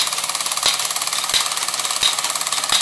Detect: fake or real real